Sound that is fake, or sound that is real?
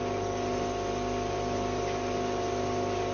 real